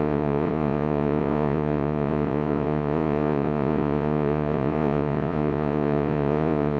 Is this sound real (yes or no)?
no